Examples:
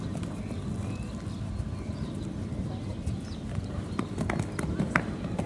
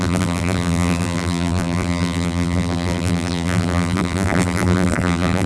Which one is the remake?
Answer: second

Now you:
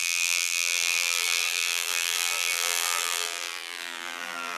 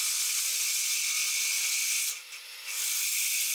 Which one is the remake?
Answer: first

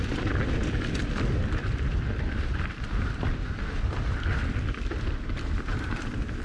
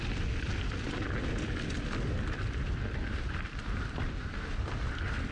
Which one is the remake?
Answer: first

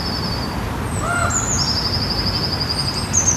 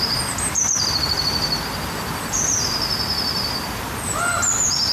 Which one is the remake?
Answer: second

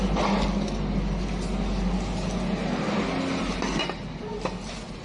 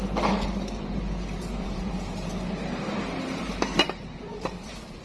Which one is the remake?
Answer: second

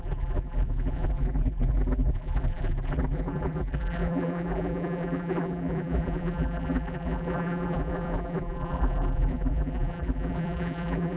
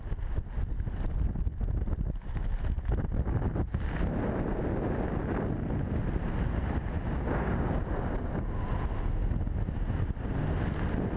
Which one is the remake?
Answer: first